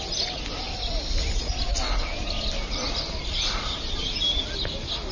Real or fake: real